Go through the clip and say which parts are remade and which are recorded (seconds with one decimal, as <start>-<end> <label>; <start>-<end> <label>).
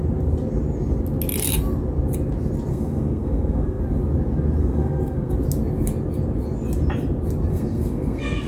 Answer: 0.0-2.7 recorded; 2.7-3.8 remade; 3.8-4.6 recorded; 4.6-5.3 remade; 5.3-7.5 recorded; 7.5-8.5 remade